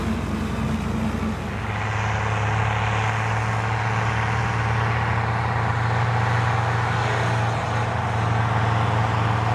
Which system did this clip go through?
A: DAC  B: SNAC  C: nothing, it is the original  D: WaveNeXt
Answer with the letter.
C